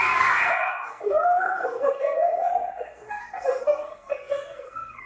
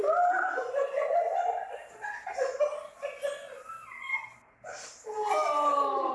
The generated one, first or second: first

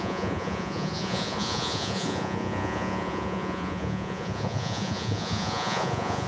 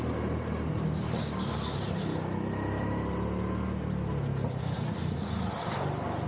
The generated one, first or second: first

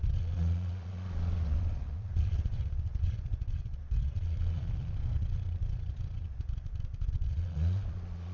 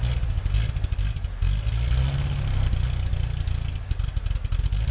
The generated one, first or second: first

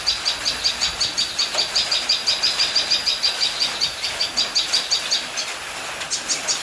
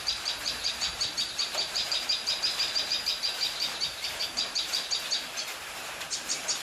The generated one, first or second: second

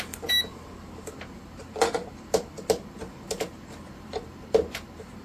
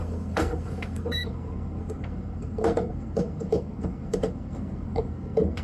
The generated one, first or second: second